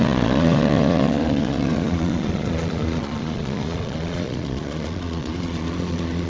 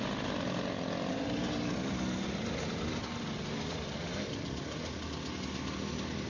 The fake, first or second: first